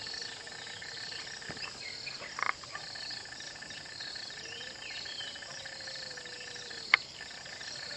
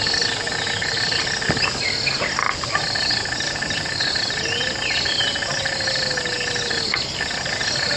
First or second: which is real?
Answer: second